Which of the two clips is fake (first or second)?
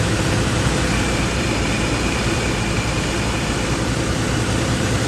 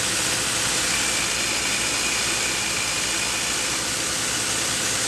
first